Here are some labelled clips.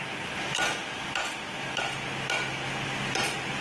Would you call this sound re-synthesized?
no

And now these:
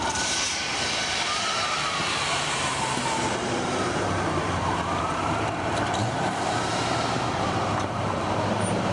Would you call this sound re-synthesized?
yes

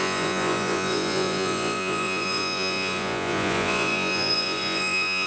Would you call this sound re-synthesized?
yes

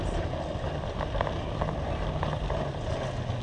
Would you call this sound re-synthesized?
no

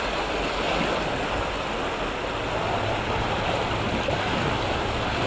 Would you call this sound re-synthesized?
no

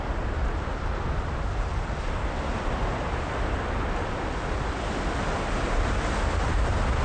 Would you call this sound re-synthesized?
no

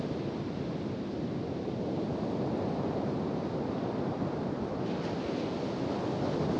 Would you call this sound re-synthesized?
no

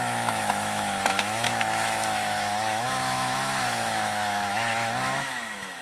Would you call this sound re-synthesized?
yes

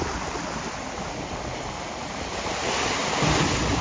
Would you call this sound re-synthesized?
no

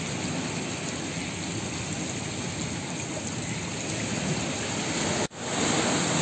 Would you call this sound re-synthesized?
no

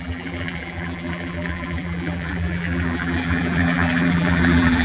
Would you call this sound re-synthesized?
yes